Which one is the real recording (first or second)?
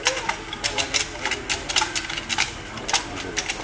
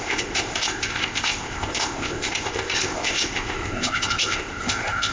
first